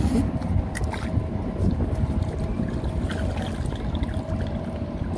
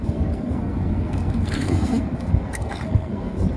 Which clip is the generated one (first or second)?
second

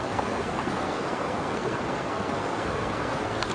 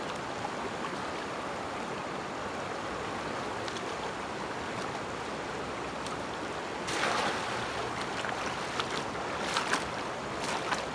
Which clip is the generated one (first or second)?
first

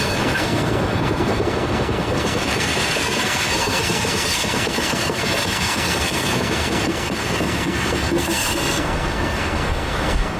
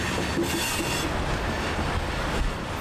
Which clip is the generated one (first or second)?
first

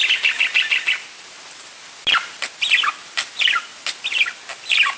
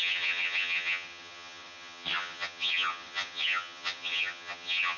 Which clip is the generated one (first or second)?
second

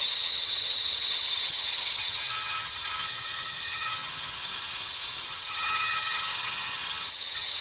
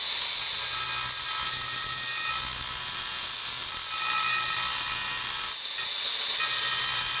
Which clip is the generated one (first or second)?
first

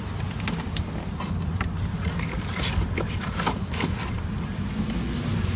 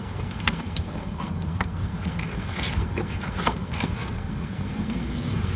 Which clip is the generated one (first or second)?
second